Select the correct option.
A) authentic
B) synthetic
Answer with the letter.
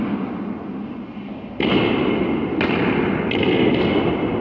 A